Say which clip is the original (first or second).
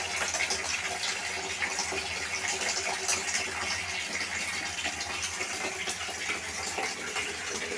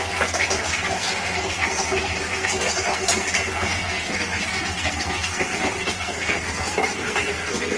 first